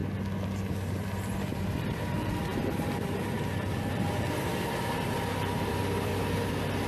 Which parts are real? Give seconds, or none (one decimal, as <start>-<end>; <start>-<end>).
0.0-0.9; 6.1-6.9